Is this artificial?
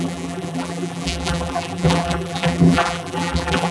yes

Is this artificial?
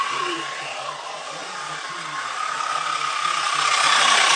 no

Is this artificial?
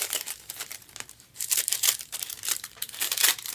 yes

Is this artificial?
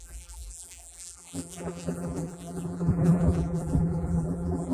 yes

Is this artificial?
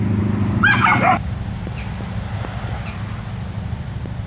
no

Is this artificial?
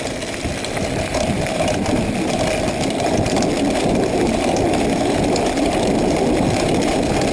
yes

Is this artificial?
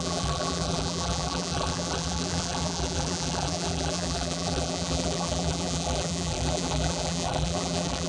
yes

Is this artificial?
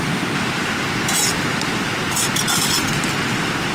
no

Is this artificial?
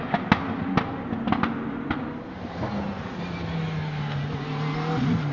no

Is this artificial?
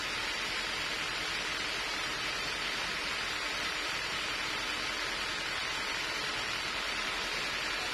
no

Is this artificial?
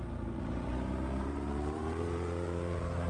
yes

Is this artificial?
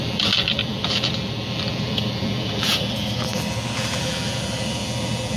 yes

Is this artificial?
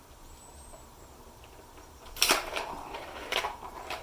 yes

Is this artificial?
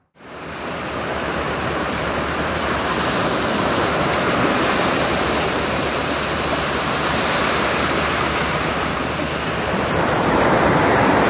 yes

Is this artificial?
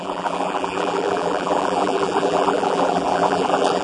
yes